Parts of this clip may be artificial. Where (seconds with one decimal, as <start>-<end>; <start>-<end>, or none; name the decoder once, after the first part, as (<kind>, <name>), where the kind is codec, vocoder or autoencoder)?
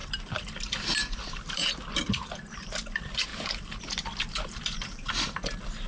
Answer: 0.0-3.3 (vocoder, BigVGAN v2); 3.8-5.9